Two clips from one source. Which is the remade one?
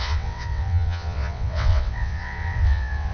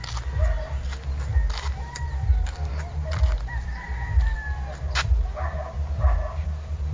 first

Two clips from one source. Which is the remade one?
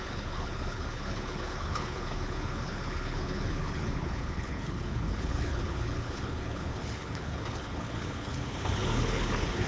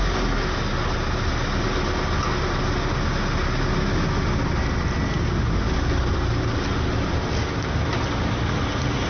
first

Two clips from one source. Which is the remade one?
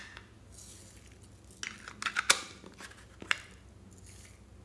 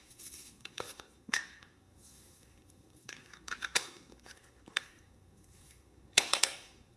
second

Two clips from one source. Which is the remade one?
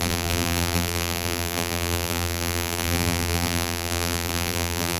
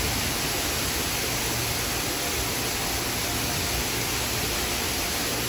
first